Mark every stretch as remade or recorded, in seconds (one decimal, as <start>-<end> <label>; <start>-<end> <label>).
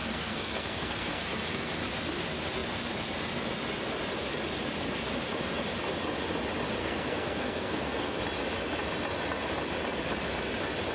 0.0-1.7 remade; 1.7-6.8 recorded; 6.8-8.2 remade; 8.2-10.9 recorded